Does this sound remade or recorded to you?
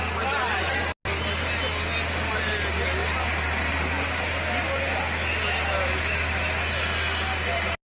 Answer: recorded